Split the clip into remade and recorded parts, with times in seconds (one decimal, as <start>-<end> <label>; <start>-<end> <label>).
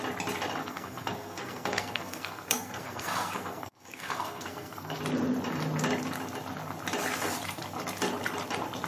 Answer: 0.0-0.6 recorded; 0.6-5.0 remade; 5.0-8.9 recorded